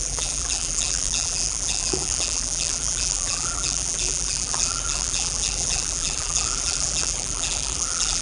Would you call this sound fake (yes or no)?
yes